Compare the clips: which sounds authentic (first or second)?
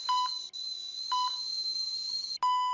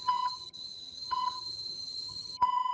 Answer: first